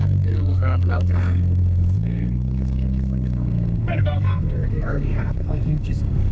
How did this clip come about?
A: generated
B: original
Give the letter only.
A